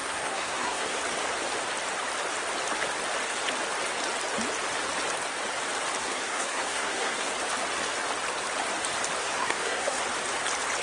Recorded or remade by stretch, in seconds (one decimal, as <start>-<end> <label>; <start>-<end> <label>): 0.0-1.0 remade; 1.0-6.0 recorded; 6.0-7.3 remade; 7.3-9.2 recorded; 9.2-10.0 remade; 10.0-10.8 recorded